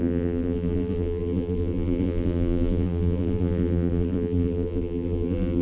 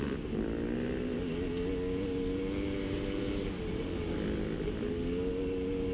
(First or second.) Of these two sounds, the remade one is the first